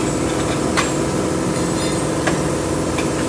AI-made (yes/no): no